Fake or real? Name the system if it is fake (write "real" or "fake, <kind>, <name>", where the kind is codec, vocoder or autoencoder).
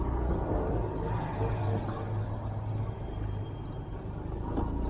real